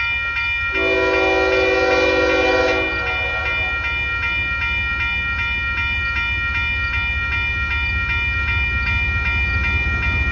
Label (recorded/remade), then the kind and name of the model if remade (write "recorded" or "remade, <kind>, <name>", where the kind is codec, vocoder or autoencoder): recorded